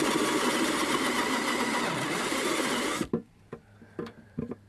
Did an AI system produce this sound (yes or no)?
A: yes